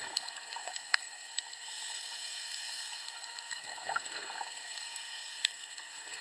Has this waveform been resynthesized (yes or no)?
yes